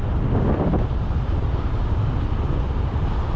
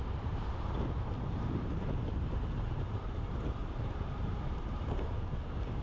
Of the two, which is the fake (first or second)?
second